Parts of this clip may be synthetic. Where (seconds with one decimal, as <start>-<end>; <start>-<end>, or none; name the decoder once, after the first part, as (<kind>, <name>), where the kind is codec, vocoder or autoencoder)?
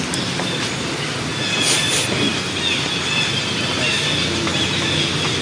none